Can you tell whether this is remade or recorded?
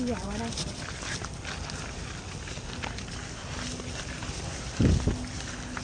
recorded